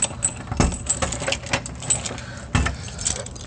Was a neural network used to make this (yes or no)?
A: no